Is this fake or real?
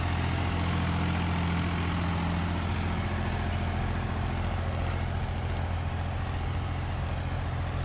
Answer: real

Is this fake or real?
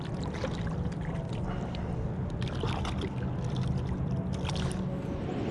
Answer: real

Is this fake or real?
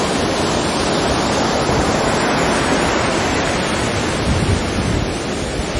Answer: real